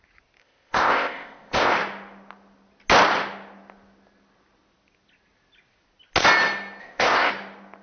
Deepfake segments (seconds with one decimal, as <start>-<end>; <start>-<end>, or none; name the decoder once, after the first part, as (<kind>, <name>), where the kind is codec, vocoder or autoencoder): 0.4-1.7 (codec, ZipCodec); 6.8-7.3